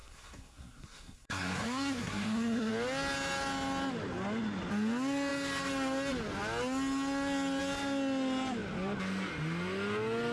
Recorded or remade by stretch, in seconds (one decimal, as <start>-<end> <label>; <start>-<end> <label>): 0.0-2.7 remade; 2.7-10.3 recorded